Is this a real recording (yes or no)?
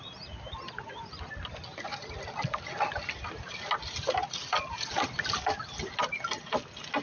yes